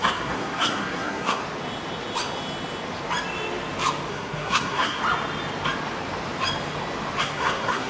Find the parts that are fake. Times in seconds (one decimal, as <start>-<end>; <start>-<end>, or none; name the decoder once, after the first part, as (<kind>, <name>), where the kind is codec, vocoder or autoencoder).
0.0-1.4 (codec, SNAC); 4.1-5.0; 7.2-7.9